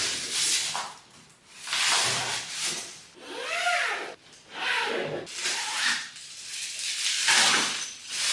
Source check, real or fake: real